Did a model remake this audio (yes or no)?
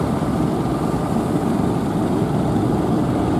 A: no